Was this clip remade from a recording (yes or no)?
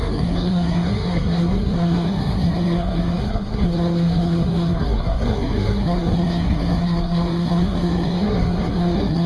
yes